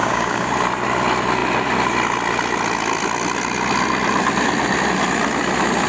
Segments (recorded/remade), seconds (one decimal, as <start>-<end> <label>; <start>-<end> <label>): 0.0-0.5 remade; 0.5-5.9 recorded